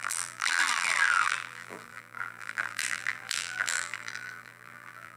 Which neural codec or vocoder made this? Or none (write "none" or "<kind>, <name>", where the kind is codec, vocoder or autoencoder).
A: vocoder, BigVGAN v2